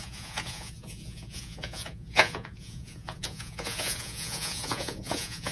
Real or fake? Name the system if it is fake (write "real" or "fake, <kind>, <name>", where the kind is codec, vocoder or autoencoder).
fake, vocoder, Vocos